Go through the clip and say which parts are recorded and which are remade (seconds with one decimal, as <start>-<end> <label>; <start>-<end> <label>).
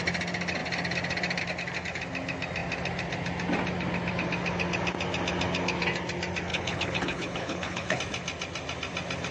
0.0-6.5 recorded; 6.5-8.0 remade; 8.0-9.3 recorded